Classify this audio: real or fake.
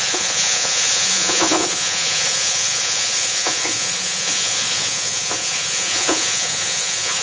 fake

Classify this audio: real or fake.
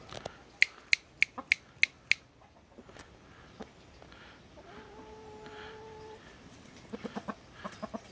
real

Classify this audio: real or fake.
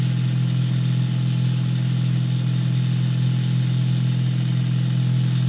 real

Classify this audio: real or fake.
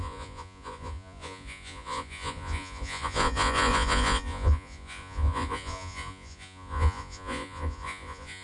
fake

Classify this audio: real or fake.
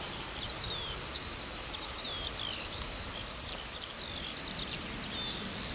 real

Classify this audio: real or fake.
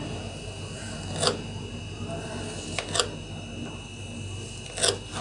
real